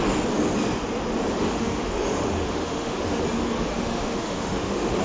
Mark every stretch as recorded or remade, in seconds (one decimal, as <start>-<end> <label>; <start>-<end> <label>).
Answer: 0.0-1.5 recorded; 1.5-3.2 remade; 3.2-3.7 recorded; 3.7-5.0 remade